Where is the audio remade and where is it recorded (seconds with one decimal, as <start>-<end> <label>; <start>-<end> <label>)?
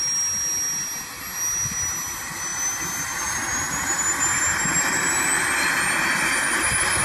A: 0.0-7.0 recorded